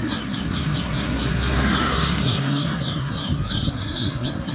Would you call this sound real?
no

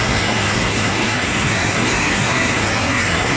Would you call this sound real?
no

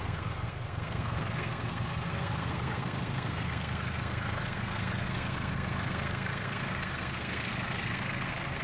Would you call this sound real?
no